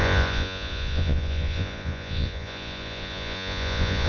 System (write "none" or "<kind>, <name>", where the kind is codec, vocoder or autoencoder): vocoder, Vocos